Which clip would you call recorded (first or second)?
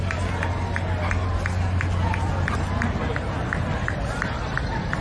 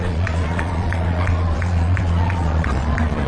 first